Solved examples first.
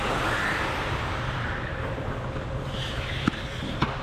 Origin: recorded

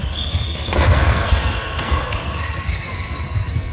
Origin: remade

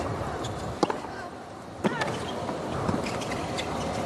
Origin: recorded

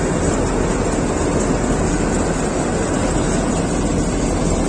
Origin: recorded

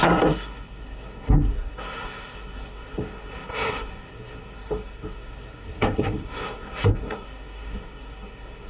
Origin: remade